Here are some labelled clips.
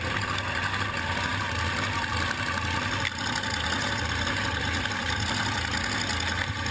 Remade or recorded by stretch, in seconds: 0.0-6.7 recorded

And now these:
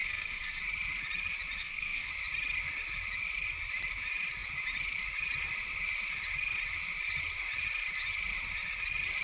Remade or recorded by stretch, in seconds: 0.0-0.6 remade; 0.6-1.6 recorded; 1.6-2.1 remade; 2.1-9.2 recorded

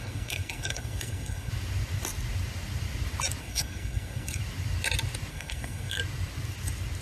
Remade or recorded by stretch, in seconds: 0.0-1.5 remade; 1.5-3.4 recorded; 3.4-4.4 remade; 4.4-5.3 recorded; 5.3-6.0 remade; 6.0-7.0 recorded

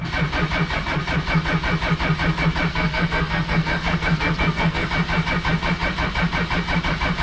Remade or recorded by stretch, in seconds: 0.0-2.7 recorded; 2.7-4.9 remade; 4.9-7.2 recorded

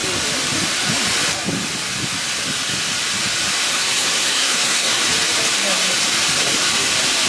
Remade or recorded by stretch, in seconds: 0.0-3.7 recorded; 3.7-5.0 remade; 5.0-7.3 recorded

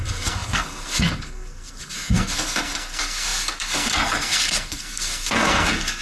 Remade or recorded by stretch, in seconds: 0.0-6.0 remade